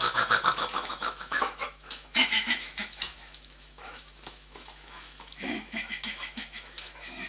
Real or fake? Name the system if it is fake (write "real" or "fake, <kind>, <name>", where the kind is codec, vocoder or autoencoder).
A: fake, autoencoder, DAC-VAE